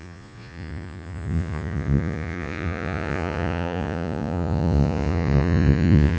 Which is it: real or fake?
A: fake